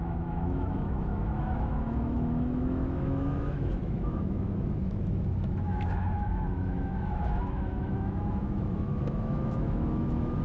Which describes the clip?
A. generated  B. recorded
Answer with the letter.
A